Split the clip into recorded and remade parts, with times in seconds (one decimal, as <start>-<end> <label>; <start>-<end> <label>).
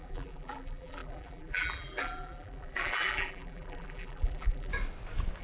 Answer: 0.0-4.7 remade; 4.7-5.4 recorded